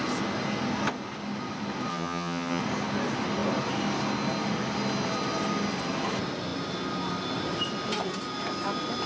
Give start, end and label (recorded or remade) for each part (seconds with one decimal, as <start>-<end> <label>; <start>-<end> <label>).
0.0-1.9 recorded; 1.9-2.6 remade; 2.6-9.1 recorded